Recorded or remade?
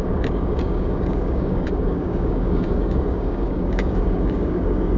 remade